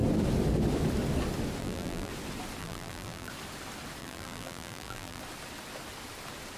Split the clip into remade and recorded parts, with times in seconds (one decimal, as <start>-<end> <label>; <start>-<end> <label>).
0.0-1.6 recorded; 1.6-2.1 remade; 2.1-2.6 recorded; 2.6-3.3 remade; 3.3-4.0 recorded; 4.0-5.2 remade; 5.2-6.6 recorded